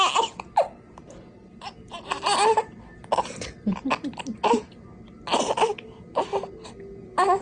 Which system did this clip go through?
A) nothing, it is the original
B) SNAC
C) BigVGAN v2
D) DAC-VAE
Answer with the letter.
A